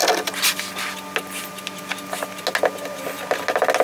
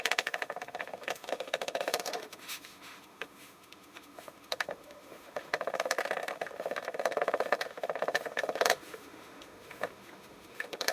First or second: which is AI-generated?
second